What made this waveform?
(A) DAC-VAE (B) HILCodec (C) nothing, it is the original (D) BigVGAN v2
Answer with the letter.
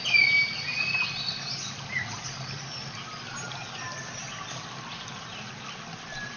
C